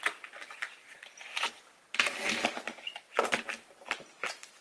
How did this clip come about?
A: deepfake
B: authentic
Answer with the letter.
B